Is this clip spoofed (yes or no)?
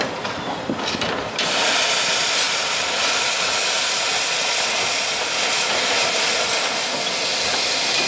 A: no